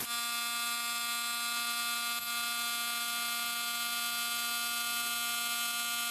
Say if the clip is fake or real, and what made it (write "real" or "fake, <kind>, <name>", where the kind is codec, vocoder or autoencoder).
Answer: real